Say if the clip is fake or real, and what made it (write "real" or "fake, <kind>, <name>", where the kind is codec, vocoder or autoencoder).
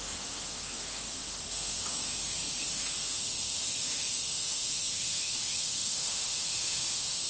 fake, autoencoder, DAC-VAE